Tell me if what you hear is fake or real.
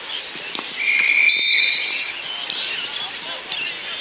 real